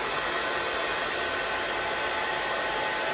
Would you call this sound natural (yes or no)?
yes